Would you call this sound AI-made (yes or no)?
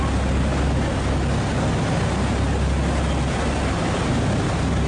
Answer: no